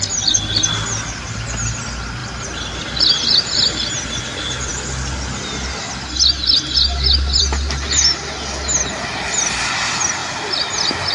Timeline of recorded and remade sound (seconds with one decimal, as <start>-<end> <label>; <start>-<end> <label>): 0.0-11.1 recorded